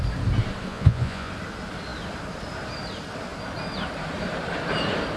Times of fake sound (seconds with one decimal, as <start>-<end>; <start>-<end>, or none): 0.7-1.3